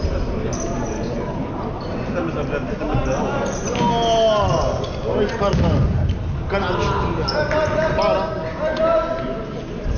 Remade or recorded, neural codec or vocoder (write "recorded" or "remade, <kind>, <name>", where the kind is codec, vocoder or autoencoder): recorded